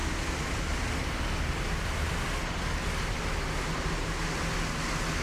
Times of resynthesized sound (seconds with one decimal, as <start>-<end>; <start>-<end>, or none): none